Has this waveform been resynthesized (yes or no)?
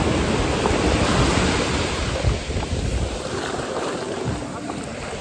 no